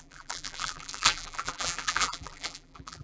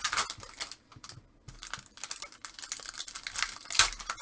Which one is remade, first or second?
first